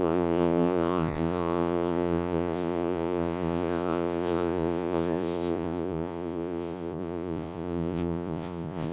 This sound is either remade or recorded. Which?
remade